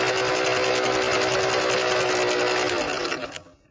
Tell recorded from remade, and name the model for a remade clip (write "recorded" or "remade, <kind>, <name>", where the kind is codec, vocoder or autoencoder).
recorded